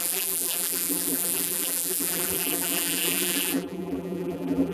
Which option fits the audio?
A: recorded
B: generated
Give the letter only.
B